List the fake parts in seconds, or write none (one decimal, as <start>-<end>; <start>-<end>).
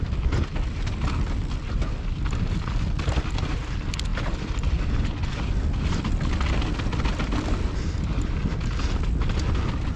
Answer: none